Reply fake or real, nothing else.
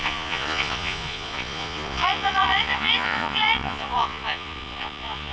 fake